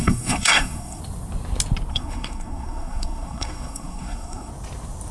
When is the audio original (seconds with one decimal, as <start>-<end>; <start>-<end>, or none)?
1.0-1.9; 4.5-5.1